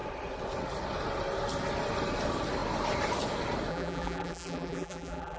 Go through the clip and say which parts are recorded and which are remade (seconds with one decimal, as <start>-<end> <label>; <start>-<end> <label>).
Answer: 0.0-3.7 recorded; 3.7-5.4 remade